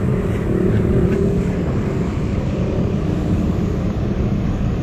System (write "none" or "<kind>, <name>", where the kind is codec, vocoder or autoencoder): codec, DAC